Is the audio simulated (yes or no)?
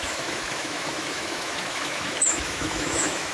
yes